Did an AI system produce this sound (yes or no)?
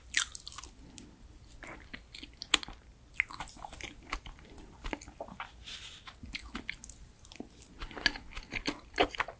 no